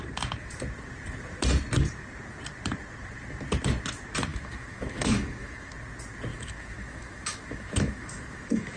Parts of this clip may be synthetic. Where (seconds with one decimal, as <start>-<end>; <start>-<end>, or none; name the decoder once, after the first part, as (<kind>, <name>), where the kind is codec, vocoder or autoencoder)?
4.3-5.7 (autoencoder, DAC-VAE); 6.3-8.8